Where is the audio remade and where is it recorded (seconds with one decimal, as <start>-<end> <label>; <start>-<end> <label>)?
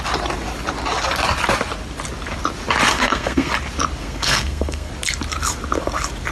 0.0-2.9 recorded; 2.9-3.5 remade; 3.5-4.0 recorded; 4.0-4.9 remade; 4.9-6.3 recorded